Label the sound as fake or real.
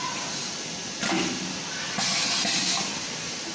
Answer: real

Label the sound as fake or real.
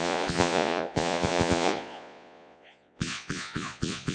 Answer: fake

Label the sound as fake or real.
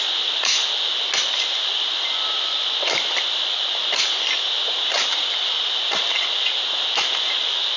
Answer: real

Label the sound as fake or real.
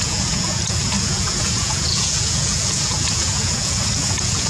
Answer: fake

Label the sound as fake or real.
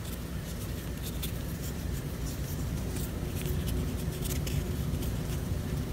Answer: real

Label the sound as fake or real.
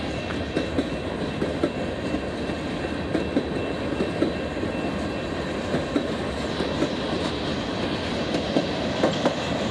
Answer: real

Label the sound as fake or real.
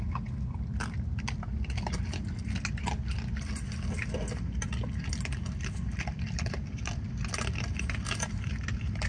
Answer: real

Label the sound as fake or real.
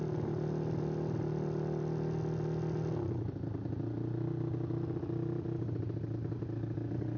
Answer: real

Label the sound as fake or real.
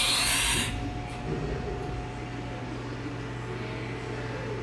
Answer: real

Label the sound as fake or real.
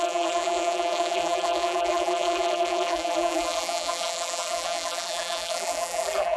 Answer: fake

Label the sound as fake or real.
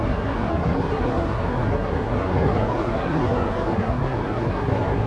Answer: fake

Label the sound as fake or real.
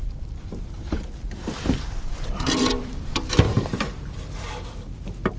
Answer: fake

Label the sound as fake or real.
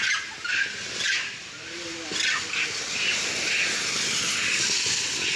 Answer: real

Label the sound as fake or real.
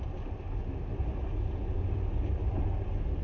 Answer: real